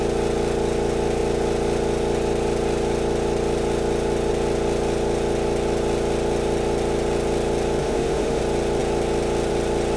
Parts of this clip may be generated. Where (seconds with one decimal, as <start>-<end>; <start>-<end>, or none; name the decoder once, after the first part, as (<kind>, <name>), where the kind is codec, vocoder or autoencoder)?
7.8-8.4 (autoencoder, DAC-VAE)